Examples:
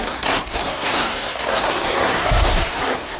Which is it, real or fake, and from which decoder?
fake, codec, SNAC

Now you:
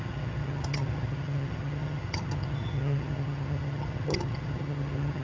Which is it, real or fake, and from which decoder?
fake, vocoder, HiFi-GAN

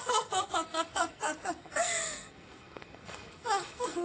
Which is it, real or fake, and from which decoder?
fake, codec, SNAC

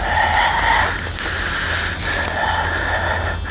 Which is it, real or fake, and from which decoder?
real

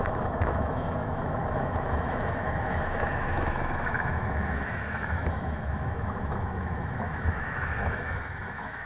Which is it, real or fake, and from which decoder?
fake, autoencoder, DAC-VAE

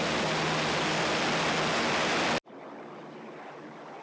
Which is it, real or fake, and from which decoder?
real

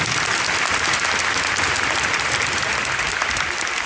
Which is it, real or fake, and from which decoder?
real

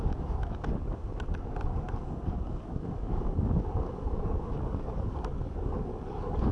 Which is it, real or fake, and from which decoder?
fake, codec, DAC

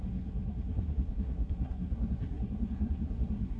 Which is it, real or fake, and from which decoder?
fake, codec, SNAC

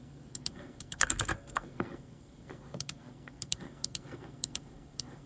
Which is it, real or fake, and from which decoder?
fake, codec, SNAC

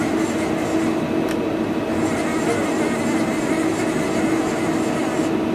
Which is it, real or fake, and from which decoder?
real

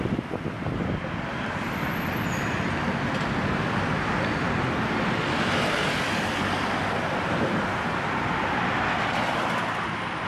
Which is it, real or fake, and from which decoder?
real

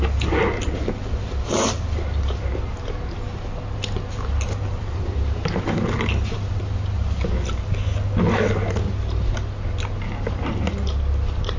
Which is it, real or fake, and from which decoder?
real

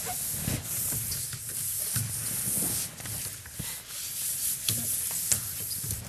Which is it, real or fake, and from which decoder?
real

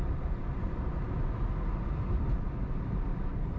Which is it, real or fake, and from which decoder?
real